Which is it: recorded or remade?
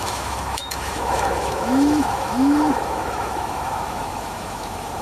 remade